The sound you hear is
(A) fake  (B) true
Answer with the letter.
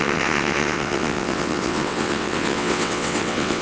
A